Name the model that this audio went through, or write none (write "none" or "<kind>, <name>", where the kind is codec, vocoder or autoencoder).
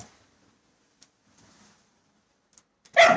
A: none